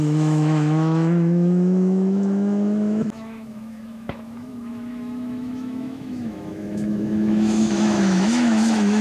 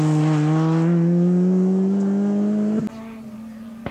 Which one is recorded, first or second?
second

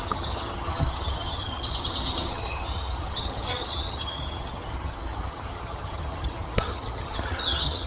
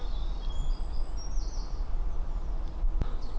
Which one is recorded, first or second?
second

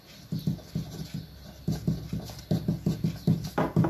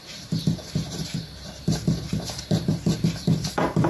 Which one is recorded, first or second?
first